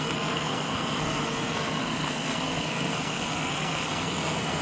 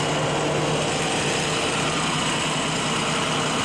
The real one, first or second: second